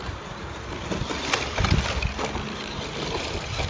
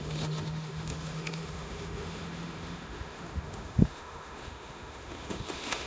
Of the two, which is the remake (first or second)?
second